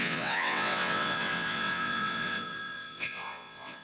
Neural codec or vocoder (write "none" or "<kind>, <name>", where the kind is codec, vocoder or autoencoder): vocoder, WaveNeXt